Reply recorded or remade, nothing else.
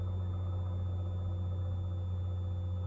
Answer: recorded